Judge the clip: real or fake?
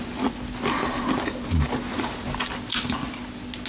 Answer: real